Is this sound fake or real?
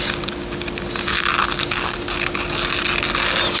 real